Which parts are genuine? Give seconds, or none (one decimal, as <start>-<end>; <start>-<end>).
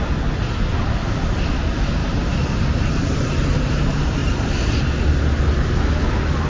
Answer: 0.0-2.0; 3.8-6.5